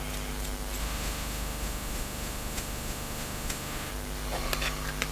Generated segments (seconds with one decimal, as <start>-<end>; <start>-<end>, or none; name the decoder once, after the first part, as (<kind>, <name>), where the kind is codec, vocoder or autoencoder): 0.8-3.9 (autoencoder, DAC-VAE)